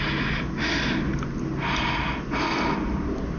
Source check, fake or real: real